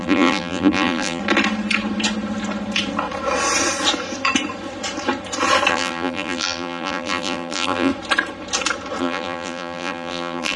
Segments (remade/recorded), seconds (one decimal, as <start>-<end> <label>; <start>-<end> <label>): 0.0-1.2 remade; 1.2-5.7 recorded; 5.7-7.9 remade; 7.9-9.0 recorded; 9.0-10.6 remade